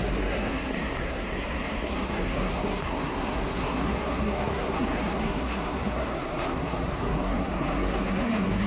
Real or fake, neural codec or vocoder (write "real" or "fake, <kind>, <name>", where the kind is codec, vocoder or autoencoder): fake, codec, SNAC